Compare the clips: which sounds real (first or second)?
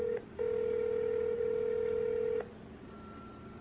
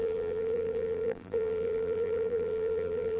first